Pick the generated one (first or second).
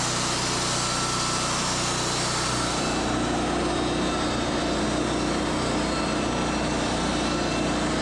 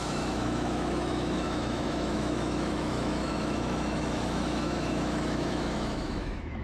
second